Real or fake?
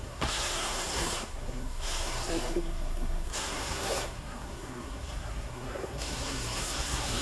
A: fake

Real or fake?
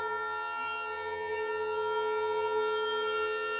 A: fake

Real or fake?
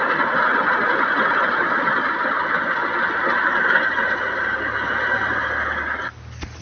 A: real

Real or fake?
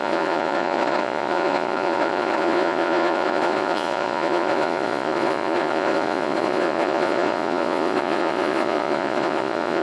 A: fake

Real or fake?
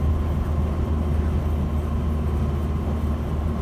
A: real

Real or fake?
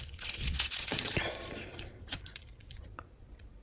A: fake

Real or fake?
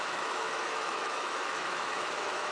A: fake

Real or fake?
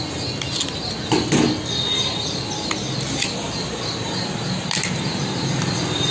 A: real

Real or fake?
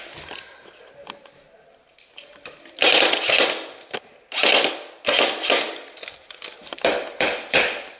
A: real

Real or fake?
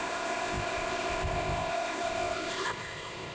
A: fake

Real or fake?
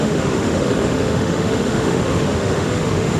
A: fake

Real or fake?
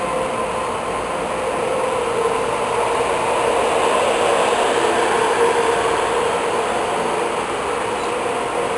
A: real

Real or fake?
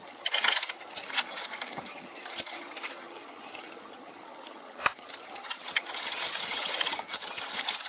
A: fake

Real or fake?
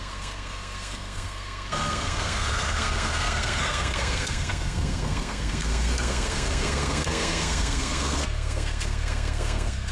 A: fake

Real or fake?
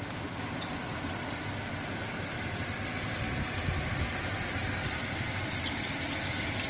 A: real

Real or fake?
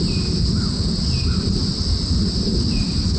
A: real